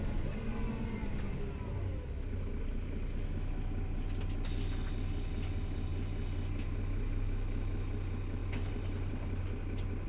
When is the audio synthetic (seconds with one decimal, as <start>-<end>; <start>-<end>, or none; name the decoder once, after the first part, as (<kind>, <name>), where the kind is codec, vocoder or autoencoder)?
none